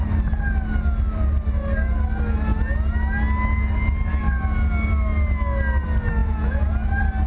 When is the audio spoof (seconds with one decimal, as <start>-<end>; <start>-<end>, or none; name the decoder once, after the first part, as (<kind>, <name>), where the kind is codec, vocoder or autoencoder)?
6.2-6.7 (vocoder, Vocos)